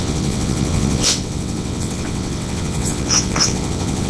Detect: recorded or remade remade